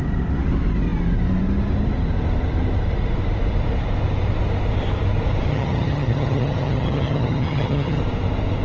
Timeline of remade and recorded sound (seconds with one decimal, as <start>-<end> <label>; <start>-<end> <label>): 0.0-5.5 recorded; 5.5-8.0 remade; 8.0-8.6 recorded